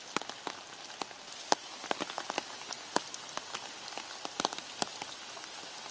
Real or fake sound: real